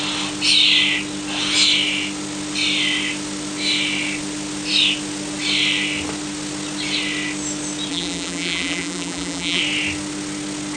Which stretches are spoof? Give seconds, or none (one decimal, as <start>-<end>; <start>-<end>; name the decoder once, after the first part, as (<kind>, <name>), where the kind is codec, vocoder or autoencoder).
7.9-9.6 (vocoder, BigVGAN v2)